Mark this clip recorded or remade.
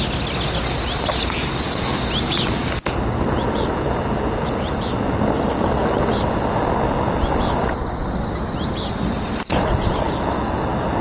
recorded